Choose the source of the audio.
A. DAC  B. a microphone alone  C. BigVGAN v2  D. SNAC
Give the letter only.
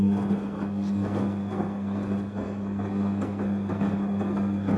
D